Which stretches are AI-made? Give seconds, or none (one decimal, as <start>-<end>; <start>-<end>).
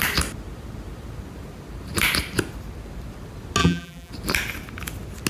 3.6-4.1